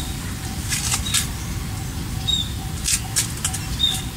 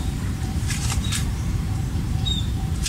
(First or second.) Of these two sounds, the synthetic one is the second